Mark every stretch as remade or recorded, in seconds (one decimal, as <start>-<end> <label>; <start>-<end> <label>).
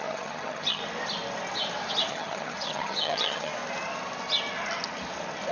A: 0.0-0.8 remade; 0.8-2.1 recorded; 2.1-3.5 remade; 3.5-5.5 recorded